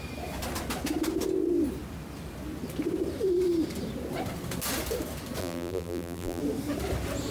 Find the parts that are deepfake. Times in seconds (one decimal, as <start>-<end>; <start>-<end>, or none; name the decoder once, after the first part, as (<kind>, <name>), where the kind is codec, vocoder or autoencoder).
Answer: 5.4-6.4 (vocoder, BigVGAN v2)